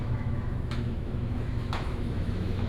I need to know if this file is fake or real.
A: fake